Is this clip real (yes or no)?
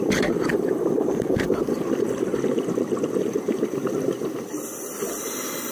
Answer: no